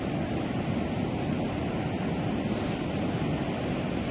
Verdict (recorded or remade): recorded